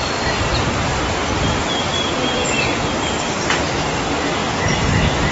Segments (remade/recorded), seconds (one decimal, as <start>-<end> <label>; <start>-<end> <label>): 0.0-5.3 remade